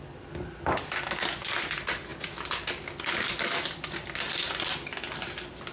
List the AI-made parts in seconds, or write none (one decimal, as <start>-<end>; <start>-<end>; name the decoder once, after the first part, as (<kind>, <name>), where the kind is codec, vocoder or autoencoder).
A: none